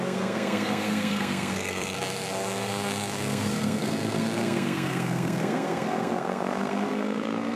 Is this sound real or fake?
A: fake